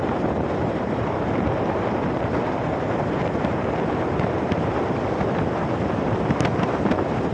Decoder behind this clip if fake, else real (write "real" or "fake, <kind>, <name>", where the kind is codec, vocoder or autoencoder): fake, vocoder, BigVGAN v2